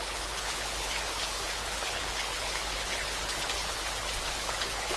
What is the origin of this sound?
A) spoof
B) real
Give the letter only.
A